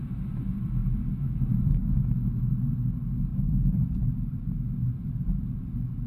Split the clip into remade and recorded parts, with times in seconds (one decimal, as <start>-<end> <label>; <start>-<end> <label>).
0.0-0.8 recorded; 0.8-1.4 remade; 1.4-1.8 recorded; 1.8-2.5 remade; 2.5-6.1 recorded